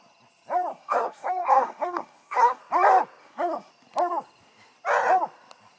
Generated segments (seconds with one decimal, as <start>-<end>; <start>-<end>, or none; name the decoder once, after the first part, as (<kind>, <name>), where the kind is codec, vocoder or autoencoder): 0.7-2.6 (codec, SNAC); 3.2-3.7